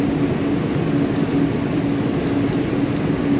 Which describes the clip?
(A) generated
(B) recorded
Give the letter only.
B